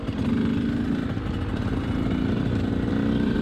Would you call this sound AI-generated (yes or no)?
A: no